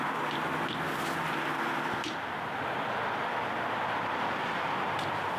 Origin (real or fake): real